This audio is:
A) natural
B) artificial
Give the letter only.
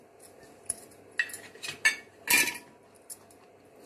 A